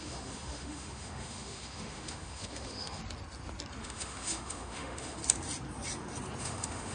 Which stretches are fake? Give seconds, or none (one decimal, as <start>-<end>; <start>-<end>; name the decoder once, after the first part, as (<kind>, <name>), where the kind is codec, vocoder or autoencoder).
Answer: 0.0-3.0 (autoencoder, DAC-VAE); 3.8-5.2; 6.4-6.9